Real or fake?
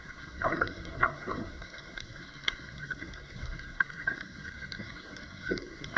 fake